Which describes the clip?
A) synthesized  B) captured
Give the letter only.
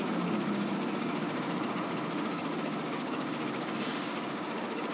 A